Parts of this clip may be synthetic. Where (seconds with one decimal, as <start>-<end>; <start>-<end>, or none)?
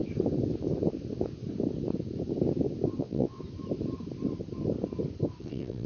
3.0-3.4; 5.4-5.9